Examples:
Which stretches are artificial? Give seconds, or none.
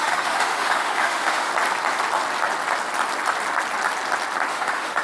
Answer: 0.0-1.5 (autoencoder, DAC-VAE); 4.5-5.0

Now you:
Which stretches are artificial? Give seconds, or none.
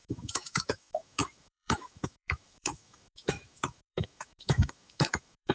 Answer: 0.0-5.5 (autoencoder, DAC-VAE)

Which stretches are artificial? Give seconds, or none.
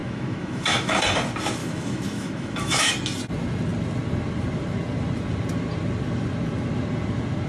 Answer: 0.0-1.0 (autoencoder, DAC-VAE); 1.6-2.9